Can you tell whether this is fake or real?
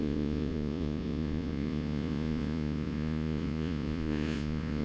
fake